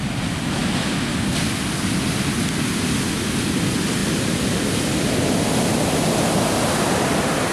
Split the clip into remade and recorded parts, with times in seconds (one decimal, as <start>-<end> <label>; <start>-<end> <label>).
0.0-7.5 recorded